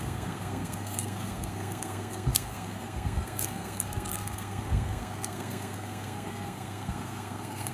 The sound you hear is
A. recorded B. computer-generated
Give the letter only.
B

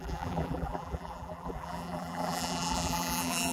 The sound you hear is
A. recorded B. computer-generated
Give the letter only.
B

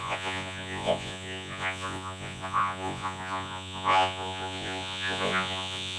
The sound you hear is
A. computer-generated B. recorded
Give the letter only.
A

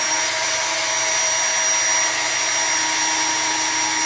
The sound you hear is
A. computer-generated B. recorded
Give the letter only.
B